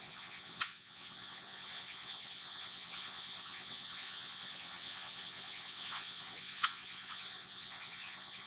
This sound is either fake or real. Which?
fake